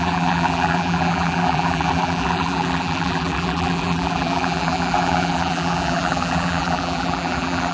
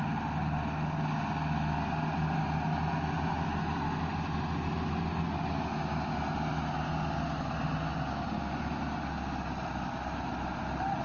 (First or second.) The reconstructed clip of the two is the first